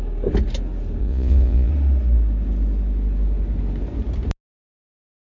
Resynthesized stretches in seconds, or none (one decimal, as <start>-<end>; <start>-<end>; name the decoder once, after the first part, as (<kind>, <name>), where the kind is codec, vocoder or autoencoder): 1.0-1.7 (vocoder, Vocos)